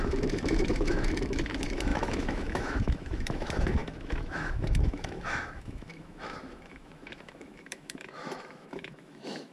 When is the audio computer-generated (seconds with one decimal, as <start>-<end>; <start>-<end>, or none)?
0.0-9.5